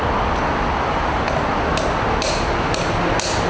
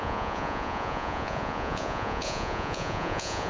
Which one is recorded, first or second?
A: first